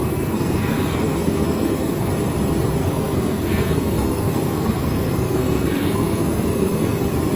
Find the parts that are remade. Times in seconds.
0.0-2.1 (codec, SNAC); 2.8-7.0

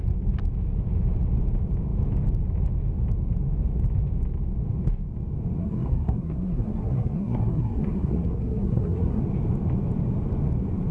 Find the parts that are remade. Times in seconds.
5.6-9.2 (codec, SNAC)

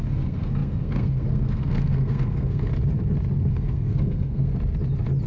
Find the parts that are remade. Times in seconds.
0.0-2.7 (codec, SNAC); 3.5-4.5

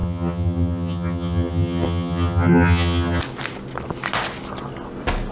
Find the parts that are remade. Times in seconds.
0.0-3.2 (vocoder, HiFi-GAN)

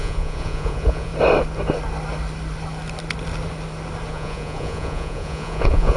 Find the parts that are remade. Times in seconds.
0.0-1.1 (vocoder, Vocos); 4.1-6.0